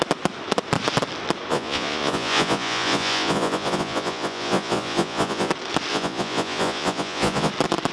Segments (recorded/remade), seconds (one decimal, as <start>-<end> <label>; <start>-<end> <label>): 0.0-1.5 recorded; 1.5-5.5 remade; 5.5-5.9 recorded; 5.9-7.5 remade; 7.5-7.9 recorded